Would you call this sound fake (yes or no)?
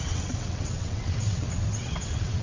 yes